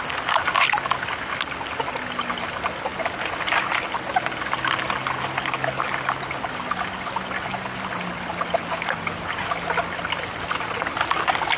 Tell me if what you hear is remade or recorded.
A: recorded